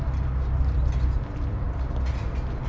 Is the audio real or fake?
real